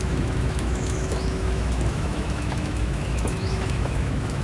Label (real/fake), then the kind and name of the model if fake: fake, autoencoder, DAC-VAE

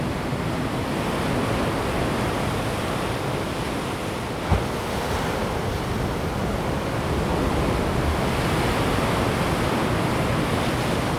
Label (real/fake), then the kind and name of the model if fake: real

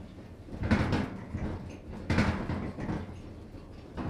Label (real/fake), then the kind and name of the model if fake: real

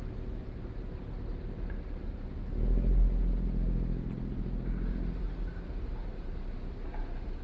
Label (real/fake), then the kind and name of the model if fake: real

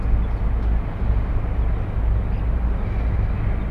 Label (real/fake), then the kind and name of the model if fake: real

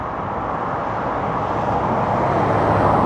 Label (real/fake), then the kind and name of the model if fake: real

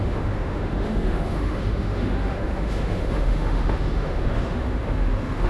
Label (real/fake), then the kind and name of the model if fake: fake, autoencoder, DAC-VAE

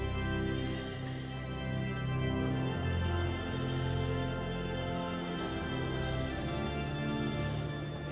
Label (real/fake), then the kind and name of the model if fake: real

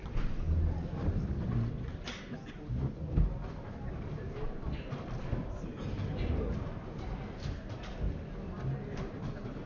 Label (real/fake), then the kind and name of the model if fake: real